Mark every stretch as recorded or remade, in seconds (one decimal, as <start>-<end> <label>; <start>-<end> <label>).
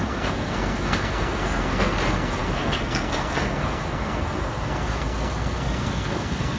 0.0-6.6 remade